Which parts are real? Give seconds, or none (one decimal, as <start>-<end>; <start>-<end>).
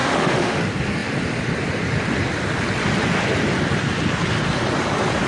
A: 0.6-5.3